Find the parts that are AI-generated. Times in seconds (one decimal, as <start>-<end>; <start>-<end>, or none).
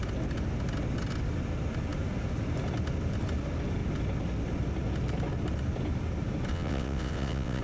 6.5-7.6